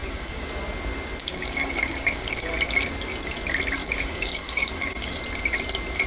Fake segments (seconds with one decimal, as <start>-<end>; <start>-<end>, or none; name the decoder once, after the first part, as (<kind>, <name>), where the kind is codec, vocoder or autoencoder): 0.0-0.5 (codec, DAC); 1.2-2.5; 3.8-5.2